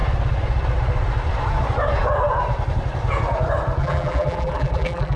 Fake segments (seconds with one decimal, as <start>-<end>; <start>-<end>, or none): 3.8-5.2